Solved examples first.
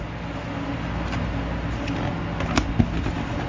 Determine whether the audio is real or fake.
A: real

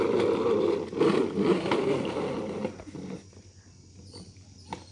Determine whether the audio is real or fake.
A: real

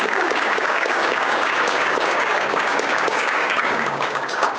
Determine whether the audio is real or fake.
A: fake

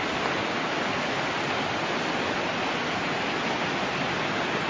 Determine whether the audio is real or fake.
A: real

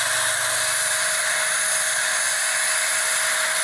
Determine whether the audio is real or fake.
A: real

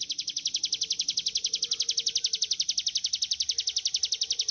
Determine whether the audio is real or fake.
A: real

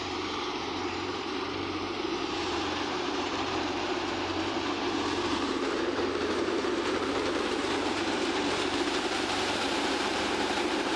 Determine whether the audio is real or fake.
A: fake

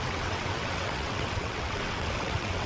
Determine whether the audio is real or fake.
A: fake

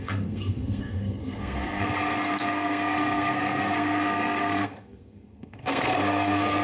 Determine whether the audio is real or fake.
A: fake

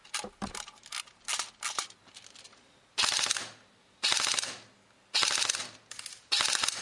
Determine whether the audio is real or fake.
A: real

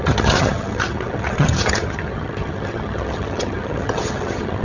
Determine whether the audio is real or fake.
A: fake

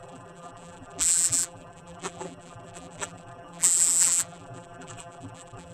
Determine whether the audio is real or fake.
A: fake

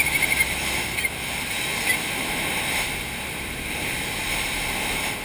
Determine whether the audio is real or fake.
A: real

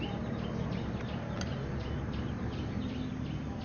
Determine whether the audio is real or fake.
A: real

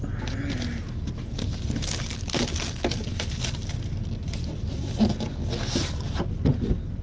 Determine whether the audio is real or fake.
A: real